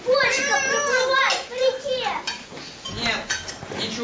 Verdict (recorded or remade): recorded